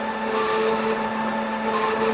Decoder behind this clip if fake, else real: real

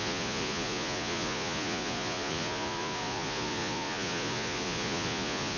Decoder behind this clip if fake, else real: fake, vocoder, Vocos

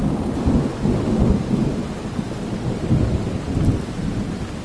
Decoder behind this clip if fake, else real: real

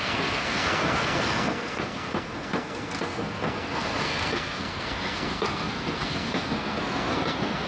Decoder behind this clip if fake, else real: fake, codec, SNAC